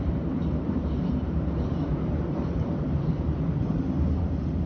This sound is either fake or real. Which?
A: fake